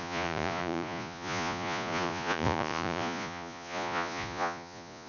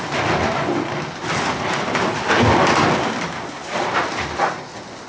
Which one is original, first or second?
second